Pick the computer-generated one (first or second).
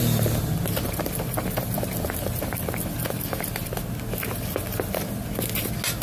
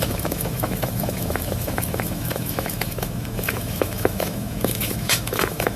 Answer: second